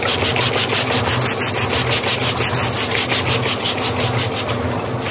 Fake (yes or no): no